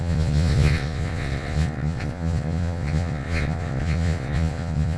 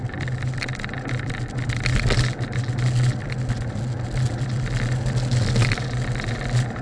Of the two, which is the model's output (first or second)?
first